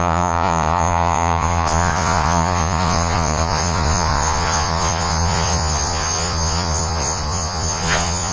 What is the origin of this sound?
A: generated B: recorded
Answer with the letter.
A